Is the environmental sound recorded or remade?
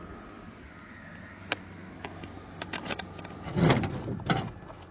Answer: recorded